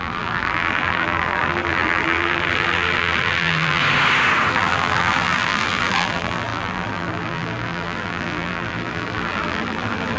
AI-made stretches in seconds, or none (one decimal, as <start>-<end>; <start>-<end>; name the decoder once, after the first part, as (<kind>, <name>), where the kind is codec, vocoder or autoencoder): 0.0-3.8 (vocoder, BigVGAN v2); 4.5-10.2